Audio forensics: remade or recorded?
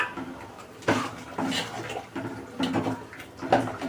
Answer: recorded